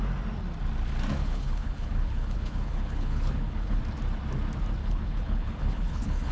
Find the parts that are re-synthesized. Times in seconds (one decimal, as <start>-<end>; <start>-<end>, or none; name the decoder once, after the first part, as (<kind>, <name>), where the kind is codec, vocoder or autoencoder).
1.2-3.8 (codec, HILCodec); 4.8-6.3